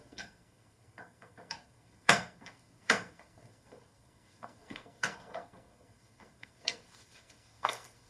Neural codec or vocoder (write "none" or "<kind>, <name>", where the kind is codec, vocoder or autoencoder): codec, SNAC